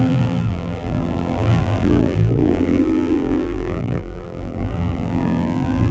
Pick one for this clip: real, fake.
fake